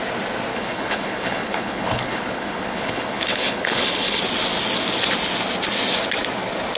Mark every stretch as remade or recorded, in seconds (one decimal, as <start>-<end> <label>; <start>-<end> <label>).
0.0-0.5 recorded; 0.5-4.2 remade; 4.2-6.8 recorded